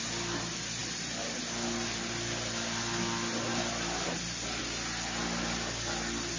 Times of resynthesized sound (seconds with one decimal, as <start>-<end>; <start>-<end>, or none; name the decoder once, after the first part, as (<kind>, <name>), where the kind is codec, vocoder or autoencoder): none